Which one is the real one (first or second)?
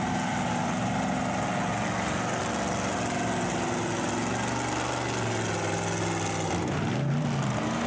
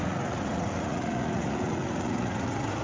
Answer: first